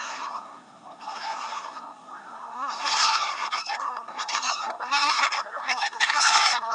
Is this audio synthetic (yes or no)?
yes